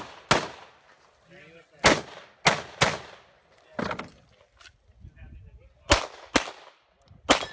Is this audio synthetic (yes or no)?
no